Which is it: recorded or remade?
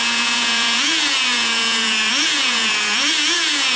remade